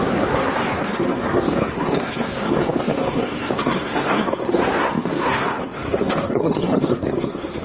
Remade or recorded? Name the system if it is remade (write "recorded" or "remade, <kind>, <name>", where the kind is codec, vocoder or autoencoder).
remade, codec, SNAC